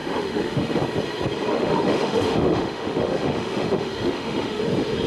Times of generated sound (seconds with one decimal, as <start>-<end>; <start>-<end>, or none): 0.0-0.8; 1.5-4.6